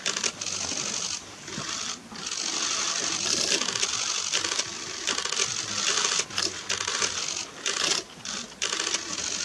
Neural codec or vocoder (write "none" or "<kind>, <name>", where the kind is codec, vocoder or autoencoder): none